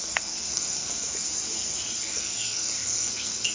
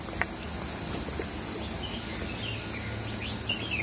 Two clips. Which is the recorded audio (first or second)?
second